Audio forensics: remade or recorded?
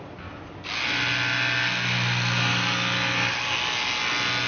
recorded